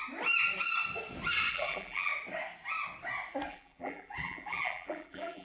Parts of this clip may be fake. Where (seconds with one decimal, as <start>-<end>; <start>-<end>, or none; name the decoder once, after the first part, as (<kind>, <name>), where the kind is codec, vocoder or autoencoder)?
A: 1.5-2.1 (vocoder, BigVGAN v2); 3.5-5.4